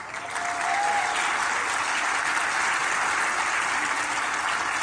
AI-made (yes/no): no